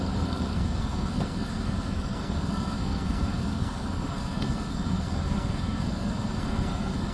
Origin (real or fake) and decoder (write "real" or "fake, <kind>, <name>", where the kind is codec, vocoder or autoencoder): fake, codec, SNAC